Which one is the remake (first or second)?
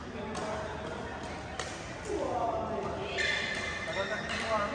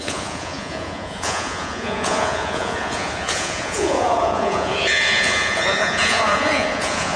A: second